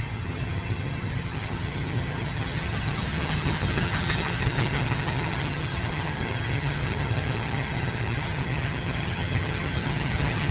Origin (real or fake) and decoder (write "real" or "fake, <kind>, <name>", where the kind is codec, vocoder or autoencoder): fake, vocoder, HiFi-GAN